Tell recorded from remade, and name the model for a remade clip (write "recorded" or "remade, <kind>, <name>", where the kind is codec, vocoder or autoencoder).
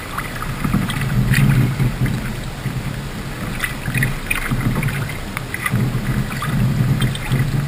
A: recorded